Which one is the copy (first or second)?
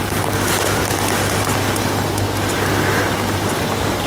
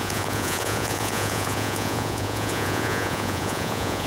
second